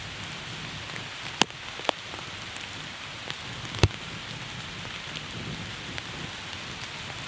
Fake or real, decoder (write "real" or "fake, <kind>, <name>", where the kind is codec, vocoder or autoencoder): real